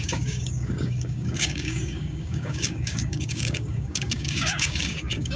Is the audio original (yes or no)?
no